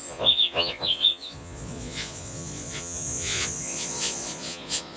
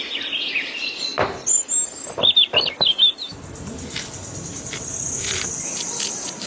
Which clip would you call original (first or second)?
second